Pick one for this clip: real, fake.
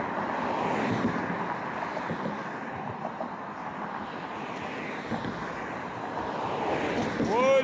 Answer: real